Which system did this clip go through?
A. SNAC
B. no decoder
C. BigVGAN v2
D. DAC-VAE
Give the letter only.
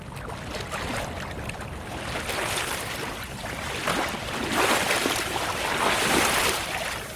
B